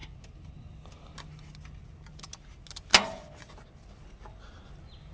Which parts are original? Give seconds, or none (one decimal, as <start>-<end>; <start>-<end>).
0.0-5.1